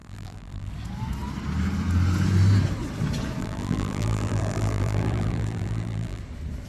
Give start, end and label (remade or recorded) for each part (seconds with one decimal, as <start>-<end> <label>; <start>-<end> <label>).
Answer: 0.0-0.7 remade; 0.7-3.4 recorded; 3.4-6.2 remade; 6.2-6.7 recorded